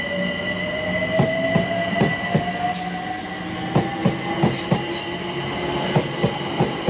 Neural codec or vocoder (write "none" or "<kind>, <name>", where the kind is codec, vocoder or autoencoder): none